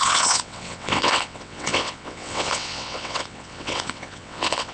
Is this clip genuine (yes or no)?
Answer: no